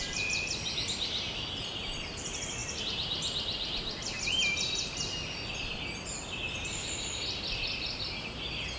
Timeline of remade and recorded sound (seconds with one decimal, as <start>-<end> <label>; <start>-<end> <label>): 0.0-2.6 recorded; 2.6-4.1 remade; 4.1-8.8 recorded